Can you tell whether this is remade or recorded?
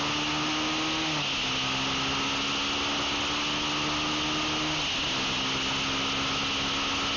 recorded